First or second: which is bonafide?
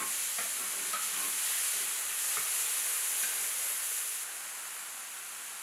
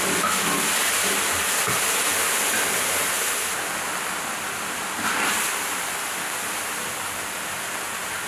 first